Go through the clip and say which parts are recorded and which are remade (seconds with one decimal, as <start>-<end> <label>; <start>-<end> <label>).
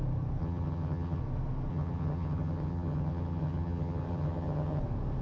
0.0-0.4 recorded; 0.4-1.2 remade; 1.2-1.7 recorded; 1.7-4.8 remade; 4.8-5.2 recorded